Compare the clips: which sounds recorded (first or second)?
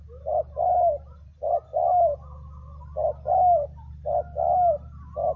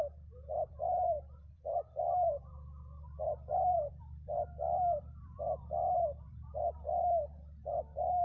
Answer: first